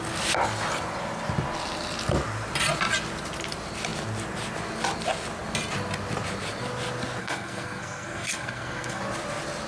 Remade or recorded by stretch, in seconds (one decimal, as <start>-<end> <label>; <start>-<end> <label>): 0.0-7.2 recorded; 7.2-9.0 remade; 9.0-9.7 recorded